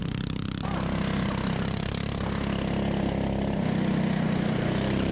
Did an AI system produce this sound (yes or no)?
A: no